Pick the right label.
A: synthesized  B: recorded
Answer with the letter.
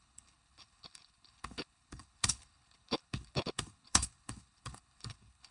A